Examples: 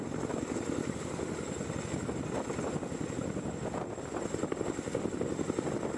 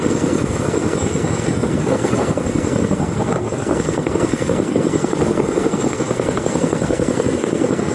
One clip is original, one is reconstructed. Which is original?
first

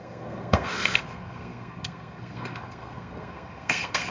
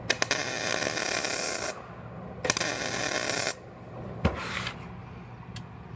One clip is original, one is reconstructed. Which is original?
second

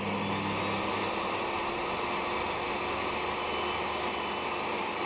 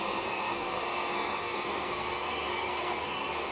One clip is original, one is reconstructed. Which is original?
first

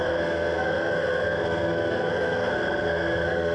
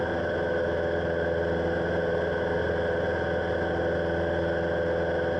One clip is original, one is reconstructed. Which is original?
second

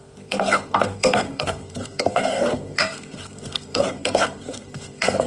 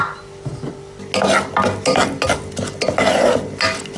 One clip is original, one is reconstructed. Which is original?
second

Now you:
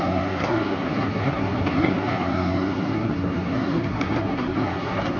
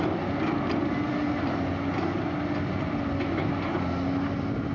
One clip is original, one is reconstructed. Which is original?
second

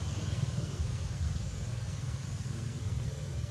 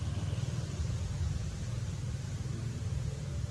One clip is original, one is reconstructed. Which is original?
second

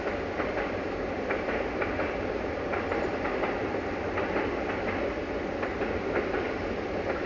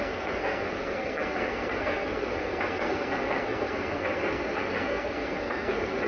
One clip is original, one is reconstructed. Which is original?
first